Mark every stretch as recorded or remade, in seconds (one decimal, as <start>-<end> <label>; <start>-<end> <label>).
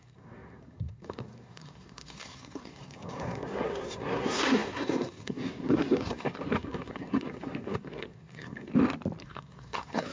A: 0.0-8.7 remade; 8.7-9.2 recorded; 9.2-10.1 remade